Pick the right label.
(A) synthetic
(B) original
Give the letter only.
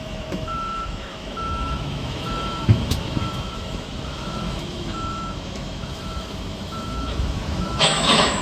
A